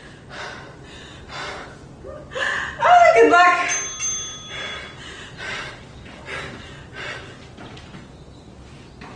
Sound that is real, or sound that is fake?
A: real